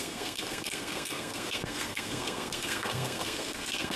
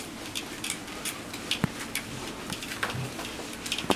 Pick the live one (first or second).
second